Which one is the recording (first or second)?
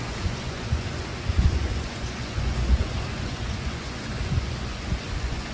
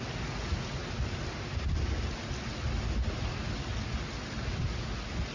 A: second